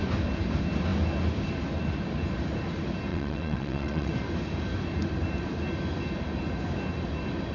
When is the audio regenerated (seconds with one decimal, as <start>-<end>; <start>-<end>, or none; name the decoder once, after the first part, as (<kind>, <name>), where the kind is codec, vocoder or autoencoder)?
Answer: 3.1-4.1 (vocoder, WaveNeXt)